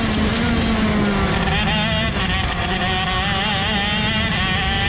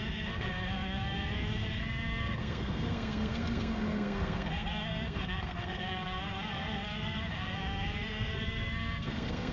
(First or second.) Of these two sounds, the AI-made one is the second